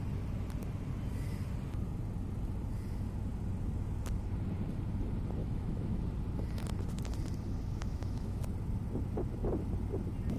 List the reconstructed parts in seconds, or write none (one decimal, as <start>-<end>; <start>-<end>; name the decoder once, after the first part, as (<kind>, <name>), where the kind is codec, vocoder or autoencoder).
5.4-6.0 (autoencoder, DAC-VAE); 7.8-8.4